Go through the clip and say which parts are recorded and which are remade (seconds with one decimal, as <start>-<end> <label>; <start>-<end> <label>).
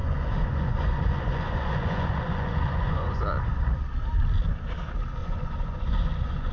0.0-3.2 remade; 3.2-5.2 recorded; 5.2-6.5 remade